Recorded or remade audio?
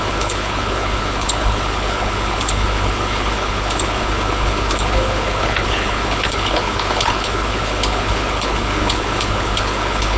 remade